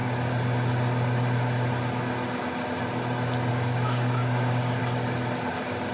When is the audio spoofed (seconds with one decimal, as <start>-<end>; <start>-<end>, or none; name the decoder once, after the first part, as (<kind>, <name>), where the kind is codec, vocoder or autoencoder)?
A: 3.5-4.8 (codec, DAC); 5.5-5.9